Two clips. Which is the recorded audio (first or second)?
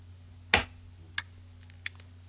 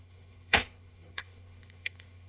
first